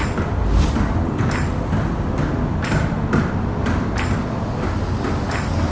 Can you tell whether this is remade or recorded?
recorded